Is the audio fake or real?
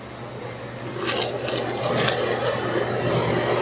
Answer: real